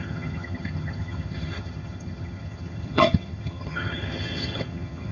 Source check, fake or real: fake